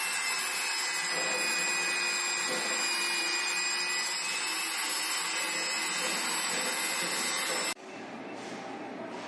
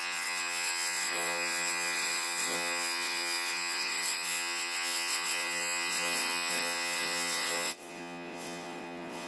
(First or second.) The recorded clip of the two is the first